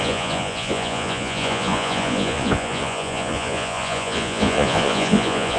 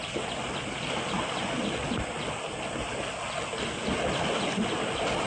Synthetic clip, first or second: first